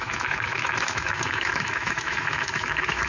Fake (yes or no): yes